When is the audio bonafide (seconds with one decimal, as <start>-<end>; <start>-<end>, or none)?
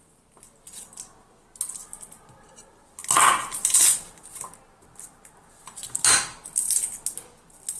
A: 0.0-7.8